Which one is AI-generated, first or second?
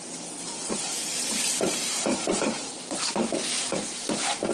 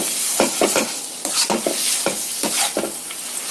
first